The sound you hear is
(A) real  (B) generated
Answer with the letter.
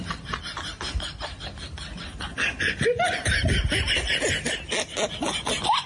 A